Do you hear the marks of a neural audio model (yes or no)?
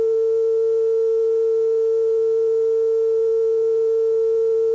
no